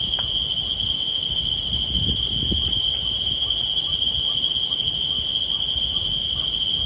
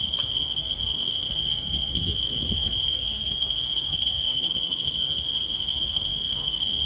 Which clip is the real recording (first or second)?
first